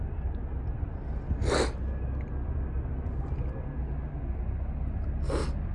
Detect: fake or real real